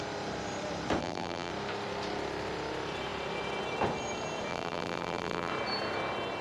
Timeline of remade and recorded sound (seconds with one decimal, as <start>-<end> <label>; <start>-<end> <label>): 0.0-1.0 recorded; 1.0-1.5 remade; 1.5-4.5 recorded; 4.5-5.5 remade; 5.5-6.4 recorded